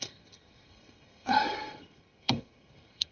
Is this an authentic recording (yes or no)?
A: no